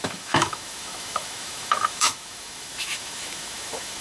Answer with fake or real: fake